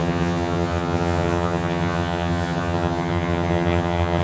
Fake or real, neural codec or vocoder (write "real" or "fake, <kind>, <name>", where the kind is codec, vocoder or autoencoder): fake, vocoder, HiFi-GAN